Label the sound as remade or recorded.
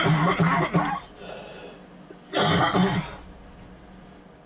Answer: recorded